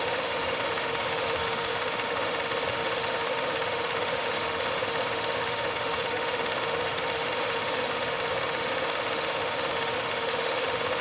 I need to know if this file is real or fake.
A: fake